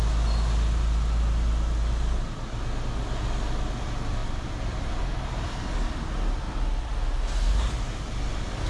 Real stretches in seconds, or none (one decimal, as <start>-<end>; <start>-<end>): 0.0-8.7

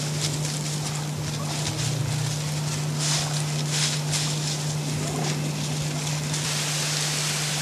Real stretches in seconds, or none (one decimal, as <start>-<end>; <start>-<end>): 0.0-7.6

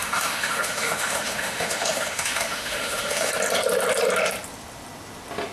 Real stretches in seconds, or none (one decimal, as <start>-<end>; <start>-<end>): 3.3-5.5

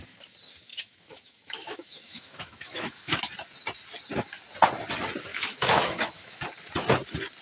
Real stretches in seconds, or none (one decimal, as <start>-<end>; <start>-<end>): 0.0-0.7; 3.2-5.3; 6.4-7.4

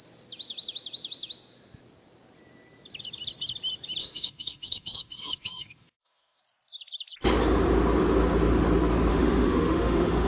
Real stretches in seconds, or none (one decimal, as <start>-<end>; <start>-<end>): 0.0-4.0; 6.4-9.1